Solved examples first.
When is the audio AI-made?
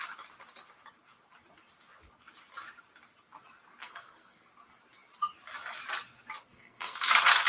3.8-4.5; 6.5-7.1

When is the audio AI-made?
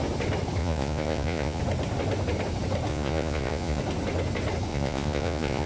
0.6-1.6; 2.9-3.8; 4.7-5.7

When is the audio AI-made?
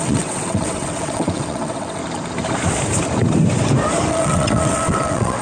0.0-2.0; 4.1-5.4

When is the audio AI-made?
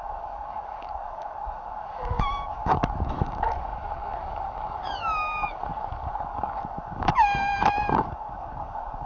0.0-9.1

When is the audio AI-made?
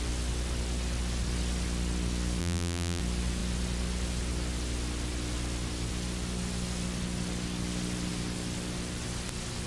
2.4-3.0